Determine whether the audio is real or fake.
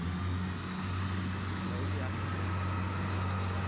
real